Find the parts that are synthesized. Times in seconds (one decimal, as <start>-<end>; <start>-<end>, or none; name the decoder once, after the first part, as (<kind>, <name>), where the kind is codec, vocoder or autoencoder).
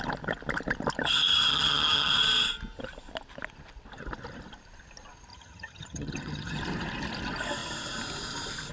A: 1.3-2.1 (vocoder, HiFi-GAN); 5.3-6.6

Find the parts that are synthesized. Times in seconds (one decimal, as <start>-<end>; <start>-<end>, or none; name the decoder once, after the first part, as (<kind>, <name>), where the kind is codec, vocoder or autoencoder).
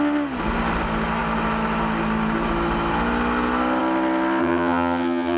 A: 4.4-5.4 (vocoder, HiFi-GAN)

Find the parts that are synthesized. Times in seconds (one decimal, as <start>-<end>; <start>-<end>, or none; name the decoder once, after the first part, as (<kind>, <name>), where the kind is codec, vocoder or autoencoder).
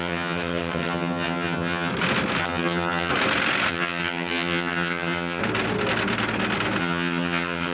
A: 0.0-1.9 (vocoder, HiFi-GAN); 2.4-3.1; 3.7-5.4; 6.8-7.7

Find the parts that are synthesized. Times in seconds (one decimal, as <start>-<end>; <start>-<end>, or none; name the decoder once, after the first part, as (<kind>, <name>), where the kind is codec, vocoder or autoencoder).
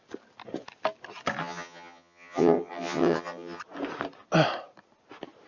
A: 1.4-3.6 (vocoder, HiFi-GAN)